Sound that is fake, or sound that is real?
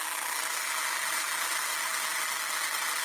real